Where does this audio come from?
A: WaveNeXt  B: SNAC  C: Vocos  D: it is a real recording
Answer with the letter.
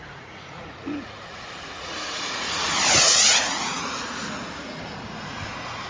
C